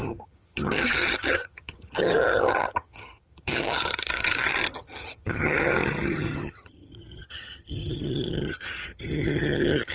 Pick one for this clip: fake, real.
fake